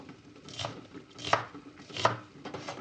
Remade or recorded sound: recorded